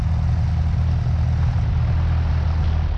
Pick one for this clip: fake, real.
real